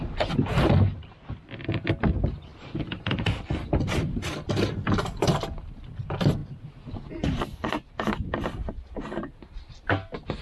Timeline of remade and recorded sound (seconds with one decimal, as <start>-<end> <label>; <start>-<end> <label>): 0.0-10.4 recorded